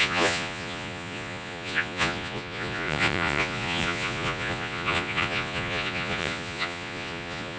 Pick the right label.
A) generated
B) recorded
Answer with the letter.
A